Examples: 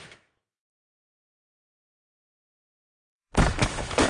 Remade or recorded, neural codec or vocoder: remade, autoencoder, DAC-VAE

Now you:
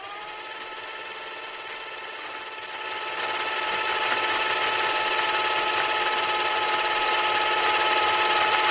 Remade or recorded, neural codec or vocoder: recorded